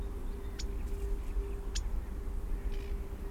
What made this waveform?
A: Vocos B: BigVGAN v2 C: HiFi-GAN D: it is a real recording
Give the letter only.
D